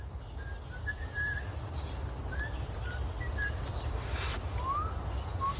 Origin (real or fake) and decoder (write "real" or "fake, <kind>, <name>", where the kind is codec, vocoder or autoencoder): real